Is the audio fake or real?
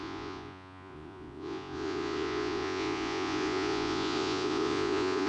fake